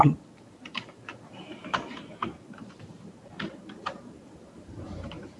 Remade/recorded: remade